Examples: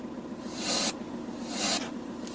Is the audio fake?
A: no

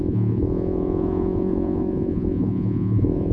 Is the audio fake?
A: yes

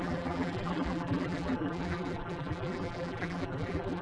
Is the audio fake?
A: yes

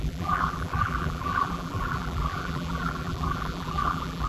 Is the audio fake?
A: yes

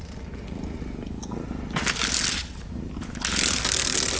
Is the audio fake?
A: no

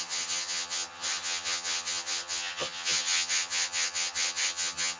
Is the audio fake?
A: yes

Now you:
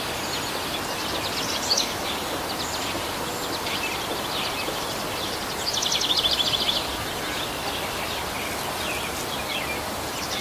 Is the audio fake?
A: no